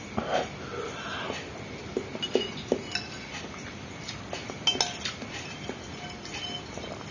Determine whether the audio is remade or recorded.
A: recorded